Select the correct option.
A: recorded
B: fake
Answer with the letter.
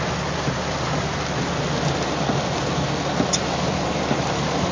A